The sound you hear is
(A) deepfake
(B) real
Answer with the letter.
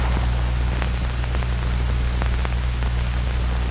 B